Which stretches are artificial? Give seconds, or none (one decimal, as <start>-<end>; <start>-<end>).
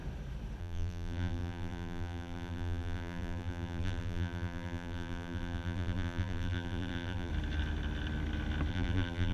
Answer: 0.6-7.3; 8.7-9.3